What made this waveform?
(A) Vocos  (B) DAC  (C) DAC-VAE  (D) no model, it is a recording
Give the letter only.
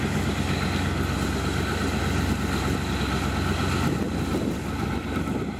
D